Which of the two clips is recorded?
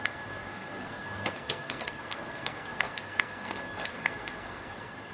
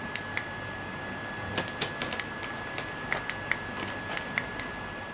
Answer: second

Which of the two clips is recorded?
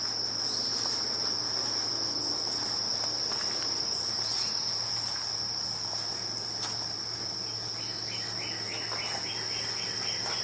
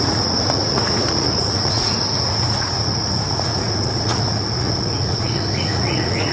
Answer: first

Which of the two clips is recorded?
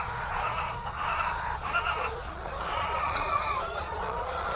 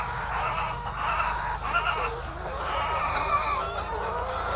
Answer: second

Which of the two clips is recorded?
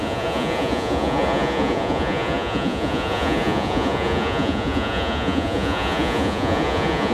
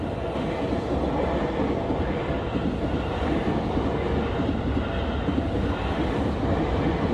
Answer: second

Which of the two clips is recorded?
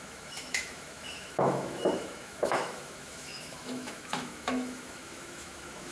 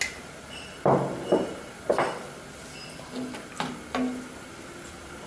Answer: second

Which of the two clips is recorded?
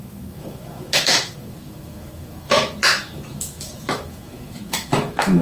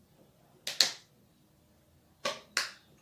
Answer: second